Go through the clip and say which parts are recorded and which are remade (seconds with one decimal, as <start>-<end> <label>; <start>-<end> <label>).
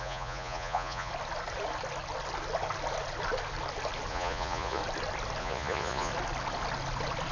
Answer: 0.0-1.1 remade; 1.1-4.1 recorded; 4.1-4.8 remade; 4.8-5.4 recorded; 5.4-6.1 remade; 6.1-7.3 recorded